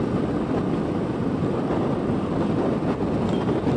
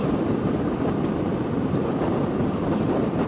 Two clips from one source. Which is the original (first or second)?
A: first